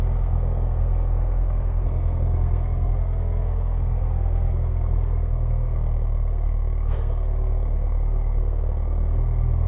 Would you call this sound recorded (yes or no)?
no